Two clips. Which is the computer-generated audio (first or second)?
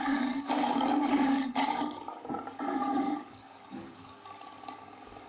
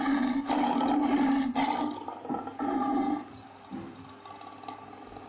first